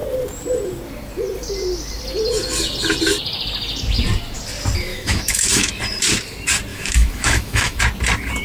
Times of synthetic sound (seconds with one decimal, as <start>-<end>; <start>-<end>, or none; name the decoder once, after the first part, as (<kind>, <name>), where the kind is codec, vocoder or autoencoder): 4.9-5.7 (autoencoder, DAC-VAE); 6.7-7.8